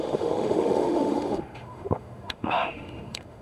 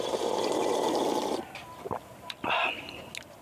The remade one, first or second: first